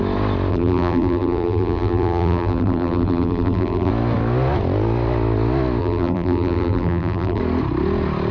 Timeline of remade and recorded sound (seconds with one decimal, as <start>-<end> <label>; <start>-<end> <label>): 0.0-0.5 recorded; 0.5-3.9 remade; 3.9-5.8 recorded; 5.8-7.4 remade; 7.4-8.3 recorded